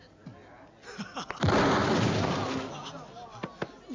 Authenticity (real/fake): real